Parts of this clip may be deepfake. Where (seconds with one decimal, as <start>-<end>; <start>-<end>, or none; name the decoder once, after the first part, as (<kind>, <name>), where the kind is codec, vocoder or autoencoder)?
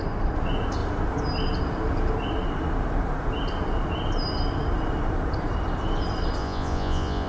6.4-7.3 (vocoder, Vocos)